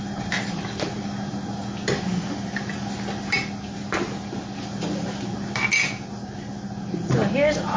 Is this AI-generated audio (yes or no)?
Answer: no